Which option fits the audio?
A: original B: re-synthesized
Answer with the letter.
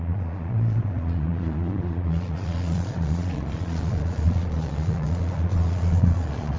B